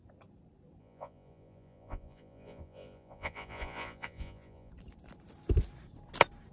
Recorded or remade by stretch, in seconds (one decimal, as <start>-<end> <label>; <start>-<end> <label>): 0.0-0.8 recorded; 0.8-4.7 remade; 4.7-6.5 recorded